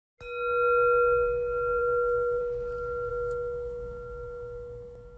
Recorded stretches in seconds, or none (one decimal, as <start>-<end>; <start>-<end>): 0.0-1.8; 2.4-3.1

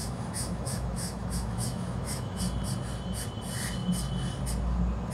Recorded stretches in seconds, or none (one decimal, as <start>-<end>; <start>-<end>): 2.4-5.1

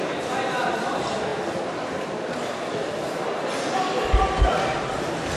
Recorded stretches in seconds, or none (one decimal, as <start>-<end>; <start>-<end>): 0.0-5.4

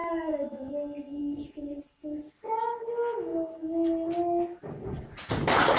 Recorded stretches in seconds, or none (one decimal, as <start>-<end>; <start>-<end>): 0.7-5.8

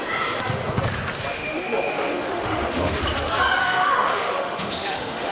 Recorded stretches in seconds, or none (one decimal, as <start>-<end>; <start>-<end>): 0.0-1.3; 3.0-3.6